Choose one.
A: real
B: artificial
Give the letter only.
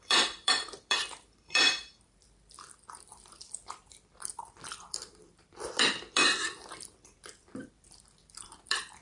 B